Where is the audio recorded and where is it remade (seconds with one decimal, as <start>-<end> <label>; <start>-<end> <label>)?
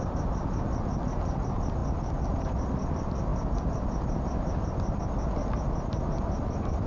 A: 0.0-3.3 recorded; 3.3-5.0 remade; 5.0-6.9 recorded